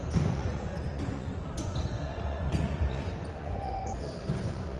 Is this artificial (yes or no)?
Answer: yes